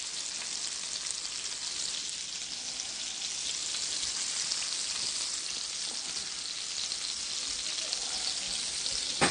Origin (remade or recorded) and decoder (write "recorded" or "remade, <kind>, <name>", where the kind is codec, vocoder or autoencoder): recorded